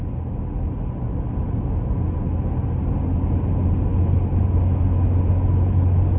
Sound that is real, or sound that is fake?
real